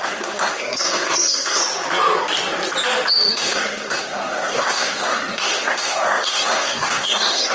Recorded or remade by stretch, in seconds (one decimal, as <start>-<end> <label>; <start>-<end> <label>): 0.0-1.6 remade; 1.6-3.3 recorded; 3.3-7.5 remade